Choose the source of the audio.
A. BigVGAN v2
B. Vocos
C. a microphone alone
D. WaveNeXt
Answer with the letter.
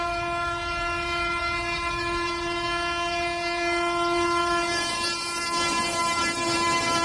A